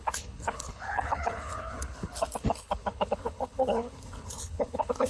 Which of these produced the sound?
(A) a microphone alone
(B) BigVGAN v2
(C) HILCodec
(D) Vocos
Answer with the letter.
C